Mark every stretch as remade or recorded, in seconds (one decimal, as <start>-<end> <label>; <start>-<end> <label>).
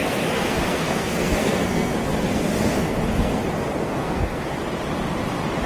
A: 0.0-3.4 remade; 3.4-3.8 recorded; 3.8-4.5 remade; 4.5-5.7 recorded